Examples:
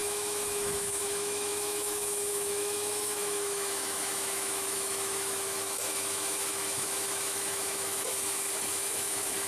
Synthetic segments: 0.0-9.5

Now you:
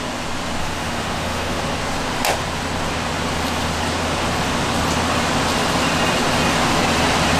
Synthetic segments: 0.6-1.6

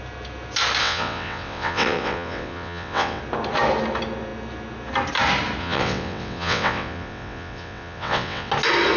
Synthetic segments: 0.8-3.2; 5.6-8.5

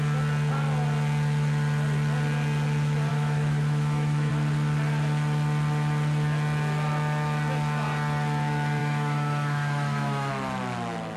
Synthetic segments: 3.1-4.3; 8.8-10.3